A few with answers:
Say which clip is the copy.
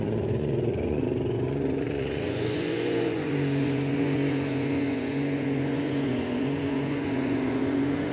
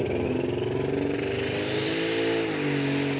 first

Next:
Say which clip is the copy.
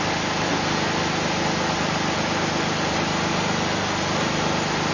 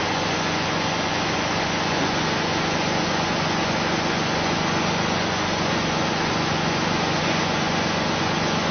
second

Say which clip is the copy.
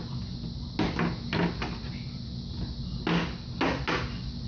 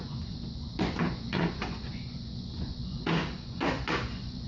second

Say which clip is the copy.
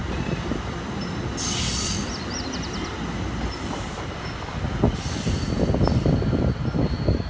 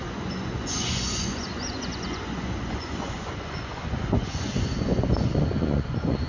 second